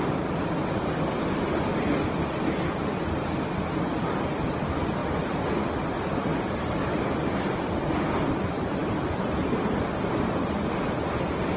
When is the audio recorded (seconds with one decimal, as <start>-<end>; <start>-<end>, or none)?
0.0-6.3; 7.1-11.6